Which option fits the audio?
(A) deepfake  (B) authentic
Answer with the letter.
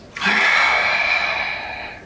B